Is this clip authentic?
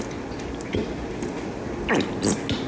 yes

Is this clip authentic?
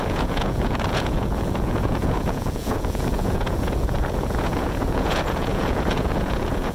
no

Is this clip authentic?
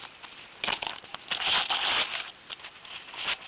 yes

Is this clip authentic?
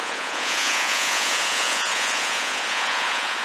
no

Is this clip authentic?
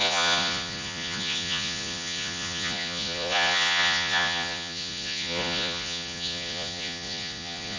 no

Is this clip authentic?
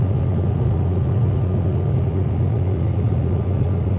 no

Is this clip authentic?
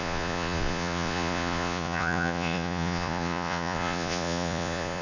no